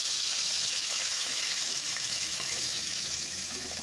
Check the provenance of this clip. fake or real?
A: fake